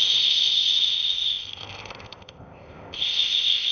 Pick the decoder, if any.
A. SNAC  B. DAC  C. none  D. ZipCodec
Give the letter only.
D